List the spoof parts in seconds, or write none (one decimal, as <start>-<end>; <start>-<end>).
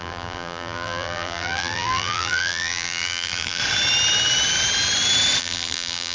0.0-3.6; 5.4-6.1